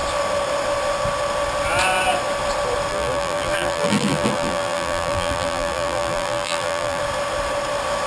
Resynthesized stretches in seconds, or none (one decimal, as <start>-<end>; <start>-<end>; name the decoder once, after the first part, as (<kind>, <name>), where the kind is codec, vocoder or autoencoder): 2.9-7.0 (vocoder, BigVGAN v2)